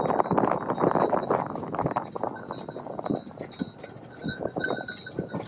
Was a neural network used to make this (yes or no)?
no